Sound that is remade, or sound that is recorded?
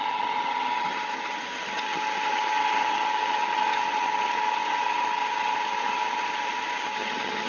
remade